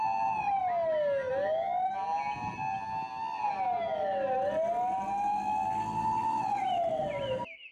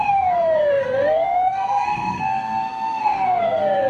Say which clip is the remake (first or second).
second